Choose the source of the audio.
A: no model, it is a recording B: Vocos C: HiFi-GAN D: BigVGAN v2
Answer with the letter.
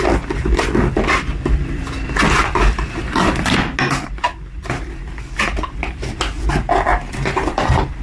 A